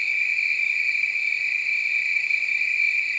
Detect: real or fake real